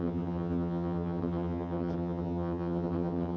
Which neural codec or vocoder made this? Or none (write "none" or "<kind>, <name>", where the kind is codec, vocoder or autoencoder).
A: vocoder, HiFi-GAN